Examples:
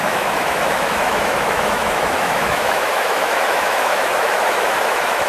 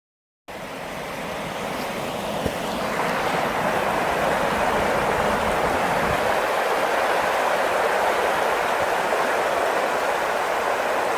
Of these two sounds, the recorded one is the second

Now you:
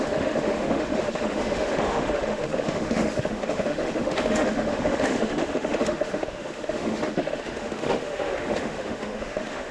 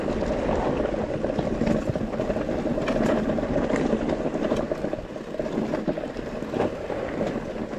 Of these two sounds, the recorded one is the second